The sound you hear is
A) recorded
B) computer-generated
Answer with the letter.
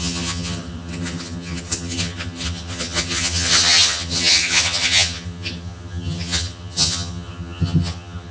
B